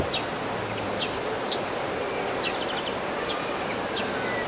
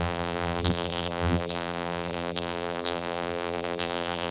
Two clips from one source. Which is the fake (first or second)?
second